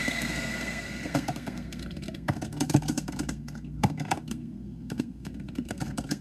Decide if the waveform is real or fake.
fake